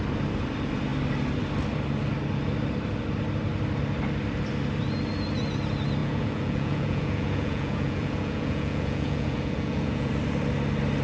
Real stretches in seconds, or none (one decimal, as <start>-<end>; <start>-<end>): 0.0-6.0; 10.1-11.0

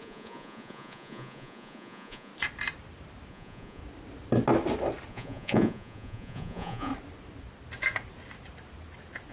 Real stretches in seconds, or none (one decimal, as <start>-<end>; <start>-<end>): 2.3-3.3; 3.8-5.1; 6.9-9.3

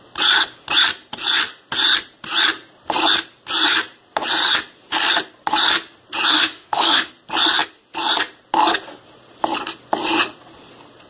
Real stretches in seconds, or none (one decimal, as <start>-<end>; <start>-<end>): 0.0-6.3; 7.1-11.1

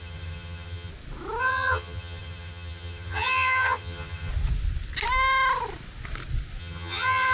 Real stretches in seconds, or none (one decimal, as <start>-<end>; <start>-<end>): 0.9-1.4; 4.3-6.6

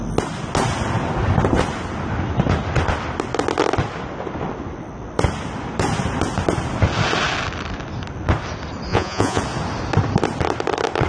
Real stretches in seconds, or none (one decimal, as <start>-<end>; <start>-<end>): 0.0-8.9; 9.4-11.1

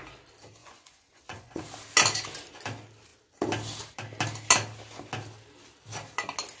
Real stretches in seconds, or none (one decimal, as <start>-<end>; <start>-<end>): 0.0-0.6; 1.6-6.6

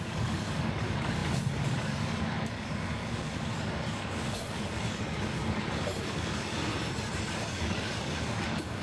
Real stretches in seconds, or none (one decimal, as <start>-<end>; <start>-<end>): 6.7-7.5

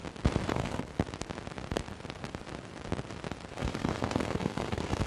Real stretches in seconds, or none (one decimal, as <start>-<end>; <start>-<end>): 0.0-0.5; 0.9-3.5